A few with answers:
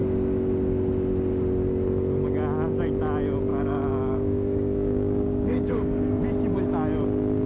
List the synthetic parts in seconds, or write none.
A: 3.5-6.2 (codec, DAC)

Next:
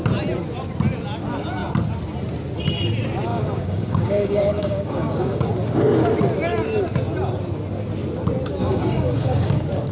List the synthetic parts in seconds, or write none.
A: 3.3-5.5 (codec, DAC); 8.6-9.5